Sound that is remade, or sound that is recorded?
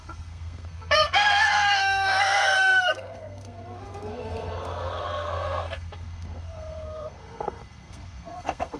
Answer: remade